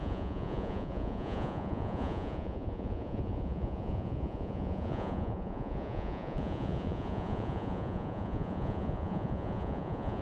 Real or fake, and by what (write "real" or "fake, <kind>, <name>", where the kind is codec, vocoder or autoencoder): fake, vocoder, Vocos